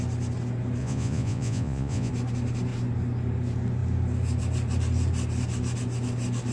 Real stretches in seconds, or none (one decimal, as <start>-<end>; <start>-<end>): 0.0-0.8; 2.1-6.5